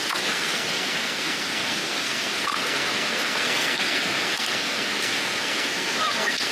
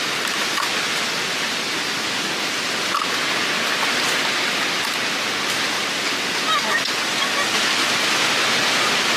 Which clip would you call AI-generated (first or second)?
first